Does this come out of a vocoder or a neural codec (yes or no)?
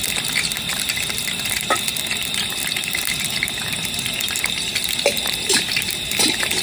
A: no